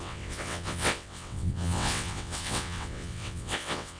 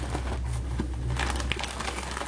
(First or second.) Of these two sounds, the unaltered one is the second